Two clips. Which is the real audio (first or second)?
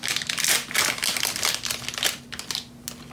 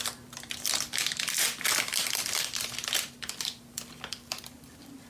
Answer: first